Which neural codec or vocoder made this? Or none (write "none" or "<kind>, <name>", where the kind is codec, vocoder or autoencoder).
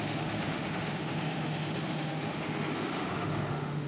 autoencoder, DAC-VAE